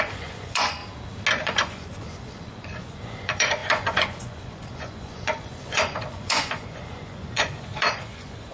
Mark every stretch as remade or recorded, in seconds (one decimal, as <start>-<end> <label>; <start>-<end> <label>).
0.0-0.8 remade; 0.8-1.3 recorded; 1.3-8.5 remade